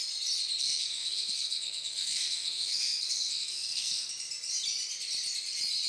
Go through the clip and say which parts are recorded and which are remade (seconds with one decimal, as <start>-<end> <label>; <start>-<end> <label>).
0.0-0.6 recorded; 0.6-4.1 remade; 4.1-5.9 recorded